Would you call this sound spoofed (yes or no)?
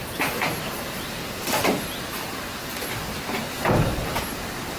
no